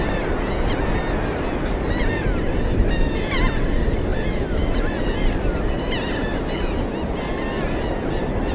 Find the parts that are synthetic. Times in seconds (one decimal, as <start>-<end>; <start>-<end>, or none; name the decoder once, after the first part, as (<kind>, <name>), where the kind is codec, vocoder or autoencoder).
4.1-6.6 (vocoder, BigVGAN v2)